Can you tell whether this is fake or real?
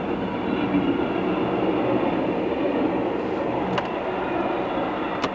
real